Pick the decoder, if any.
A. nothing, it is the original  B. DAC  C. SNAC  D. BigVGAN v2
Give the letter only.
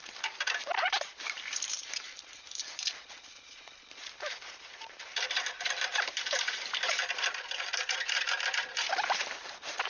D